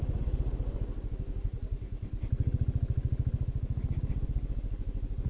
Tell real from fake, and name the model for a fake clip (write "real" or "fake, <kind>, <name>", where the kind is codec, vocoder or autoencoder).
real